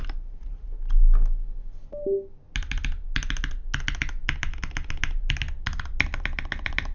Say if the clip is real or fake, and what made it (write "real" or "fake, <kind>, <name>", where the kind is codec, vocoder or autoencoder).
real